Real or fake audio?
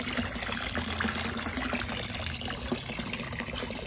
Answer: real